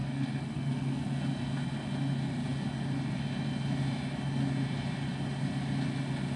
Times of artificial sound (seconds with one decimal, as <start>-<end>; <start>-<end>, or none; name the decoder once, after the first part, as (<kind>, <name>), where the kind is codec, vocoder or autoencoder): 0.0-1.2 (codec, SNAC)